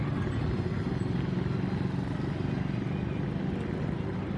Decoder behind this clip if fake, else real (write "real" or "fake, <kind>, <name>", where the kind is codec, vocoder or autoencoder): real